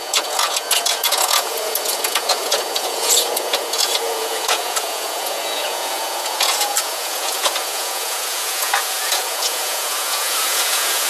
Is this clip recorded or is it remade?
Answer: remade